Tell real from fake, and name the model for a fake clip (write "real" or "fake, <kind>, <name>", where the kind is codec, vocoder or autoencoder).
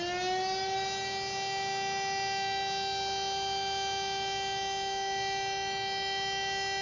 real